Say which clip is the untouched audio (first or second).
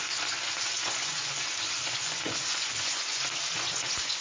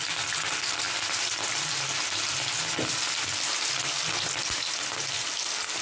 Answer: second